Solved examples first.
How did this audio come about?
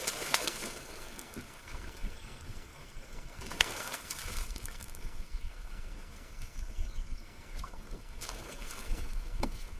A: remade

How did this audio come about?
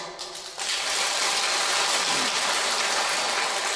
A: recorded